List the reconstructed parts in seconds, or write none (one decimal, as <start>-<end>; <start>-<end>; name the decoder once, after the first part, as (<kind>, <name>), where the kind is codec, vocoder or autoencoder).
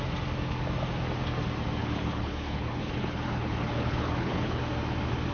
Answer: 1.8-4.6 (codec, HILCodec)